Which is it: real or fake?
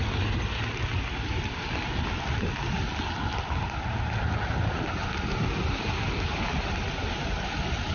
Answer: real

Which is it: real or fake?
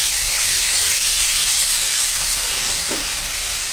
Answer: fake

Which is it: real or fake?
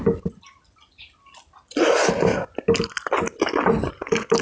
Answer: real